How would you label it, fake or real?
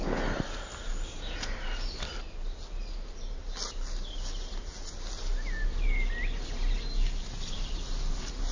real